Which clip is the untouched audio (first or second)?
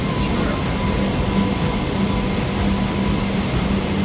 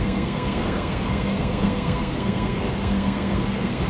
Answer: first